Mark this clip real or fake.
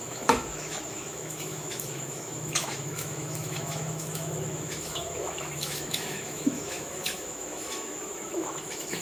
fake